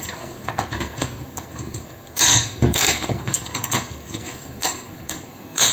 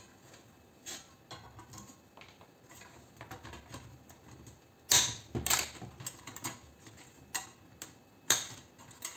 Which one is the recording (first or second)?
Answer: second